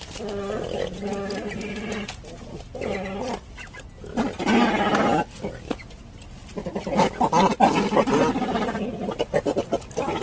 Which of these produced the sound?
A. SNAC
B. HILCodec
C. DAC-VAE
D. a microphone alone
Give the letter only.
D